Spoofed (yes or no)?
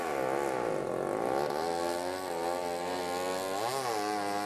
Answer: no